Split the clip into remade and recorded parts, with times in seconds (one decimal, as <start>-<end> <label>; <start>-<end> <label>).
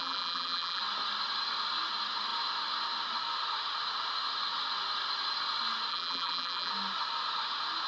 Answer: 0.0-0.8 remade; 0.8-5.9 recorded; 5.9-6.7 remade; 6.7-7.9 recorded